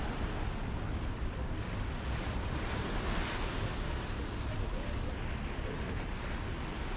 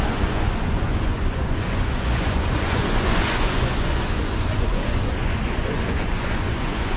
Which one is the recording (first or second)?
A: first